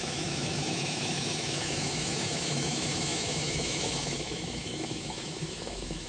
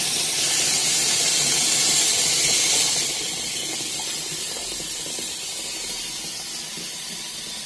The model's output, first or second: first